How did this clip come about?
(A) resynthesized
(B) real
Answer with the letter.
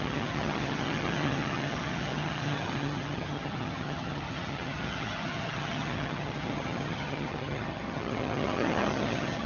A